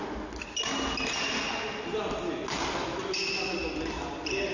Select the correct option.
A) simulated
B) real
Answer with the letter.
B